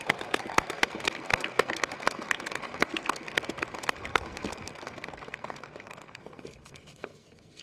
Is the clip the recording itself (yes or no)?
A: no